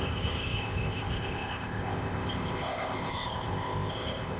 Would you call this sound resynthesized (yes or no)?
yes